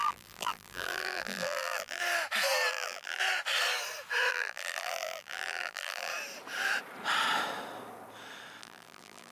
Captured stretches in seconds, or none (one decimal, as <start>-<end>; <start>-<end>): 2.0-2.7; 3.2-4.3; 6.1-8.6